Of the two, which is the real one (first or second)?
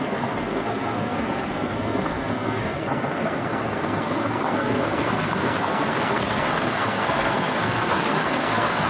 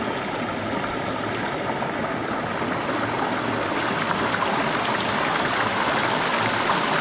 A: second